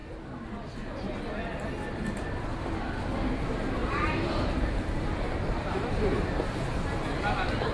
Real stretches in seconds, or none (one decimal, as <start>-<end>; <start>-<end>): 0.0-3.8; 6.4-7.7